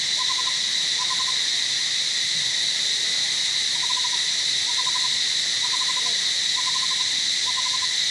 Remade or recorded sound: remade